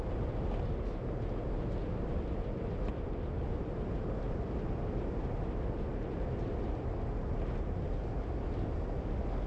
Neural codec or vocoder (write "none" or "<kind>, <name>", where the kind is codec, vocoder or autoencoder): none